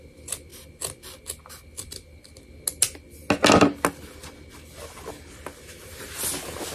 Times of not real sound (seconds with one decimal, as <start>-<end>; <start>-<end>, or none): none